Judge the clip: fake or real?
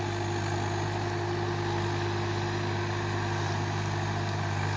real